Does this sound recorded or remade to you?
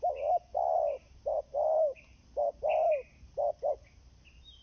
recorded